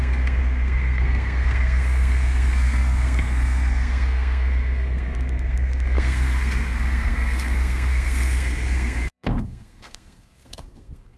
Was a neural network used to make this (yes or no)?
yes